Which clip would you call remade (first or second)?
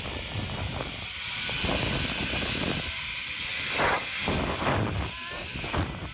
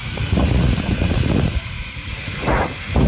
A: second